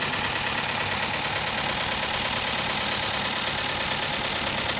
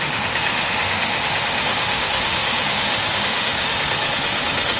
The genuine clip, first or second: first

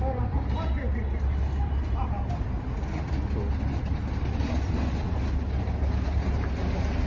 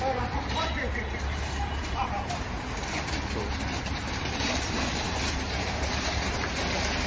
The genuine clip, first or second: first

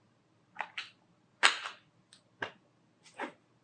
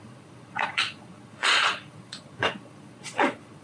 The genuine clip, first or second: first